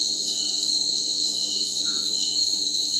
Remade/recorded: remade